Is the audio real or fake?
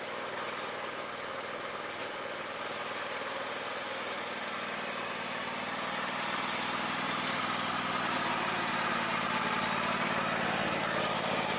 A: real